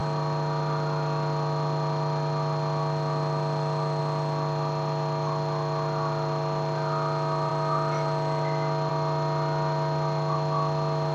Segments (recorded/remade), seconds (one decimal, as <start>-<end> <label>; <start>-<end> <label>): 0.0-11.1 recorded